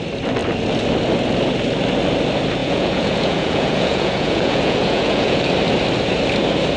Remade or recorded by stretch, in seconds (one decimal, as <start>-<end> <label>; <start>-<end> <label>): 0.0-2.6 recorded; 2.6-5.5 remade; 5.5-6.8 recorded